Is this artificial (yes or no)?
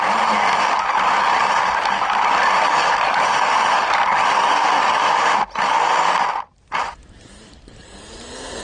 no